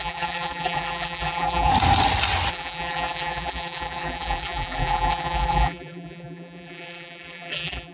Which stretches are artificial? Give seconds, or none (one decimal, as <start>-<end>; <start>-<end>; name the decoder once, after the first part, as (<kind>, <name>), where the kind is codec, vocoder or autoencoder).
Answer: 0.0-1.7 (vocoder, BigVGAN v2); 2.5-7.9